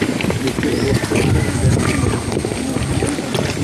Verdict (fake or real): real